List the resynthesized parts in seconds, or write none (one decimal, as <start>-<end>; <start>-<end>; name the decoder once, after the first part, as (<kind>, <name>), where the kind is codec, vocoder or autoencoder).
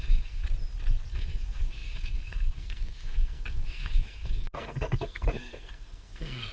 0.0-0.4 (codec, SNAC); 1.1-6.5